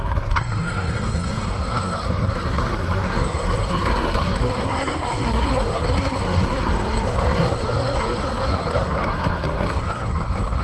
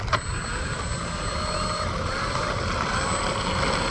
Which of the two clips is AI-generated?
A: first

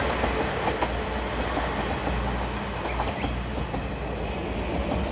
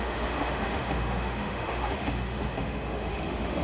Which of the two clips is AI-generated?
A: second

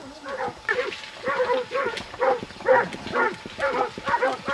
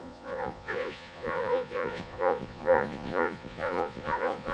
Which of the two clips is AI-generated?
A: second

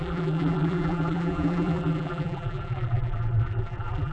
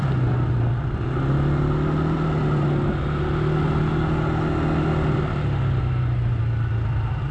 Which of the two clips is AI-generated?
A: first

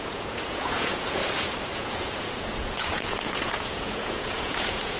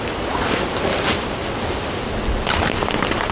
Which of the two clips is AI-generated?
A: first